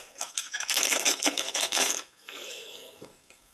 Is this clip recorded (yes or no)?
no